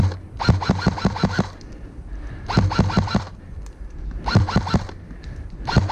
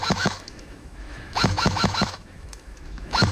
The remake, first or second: second